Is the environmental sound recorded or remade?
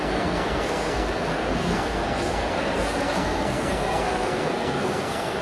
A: remade